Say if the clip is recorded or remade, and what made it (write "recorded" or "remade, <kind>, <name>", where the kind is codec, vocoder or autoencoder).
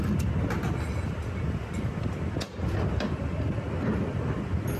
recorded